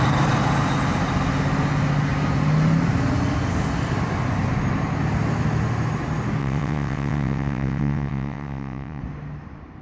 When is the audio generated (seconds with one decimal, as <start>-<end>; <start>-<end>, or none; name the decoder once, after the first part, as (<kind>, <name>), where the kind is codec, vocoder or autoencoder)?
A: 6.4-9.0 (vocoder, WaveNeXt)